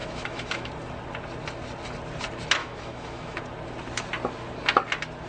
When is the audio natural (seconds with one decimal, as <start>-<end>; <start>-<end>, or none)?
0.7-2.6; 3.4-5.3